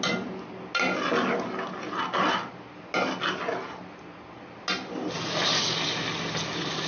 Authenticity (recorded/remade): recorded